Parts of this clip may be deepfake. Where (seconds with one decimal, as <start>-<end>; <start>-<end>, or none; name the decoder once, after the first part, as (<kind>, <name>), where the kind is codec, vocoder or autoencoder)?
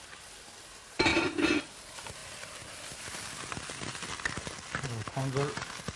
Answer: none